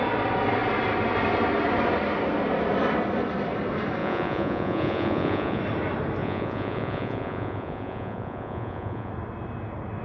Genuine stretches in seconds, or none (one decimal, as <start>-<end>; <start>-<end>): 0.0-4.0; 5.6-6.2; 9.1-10.0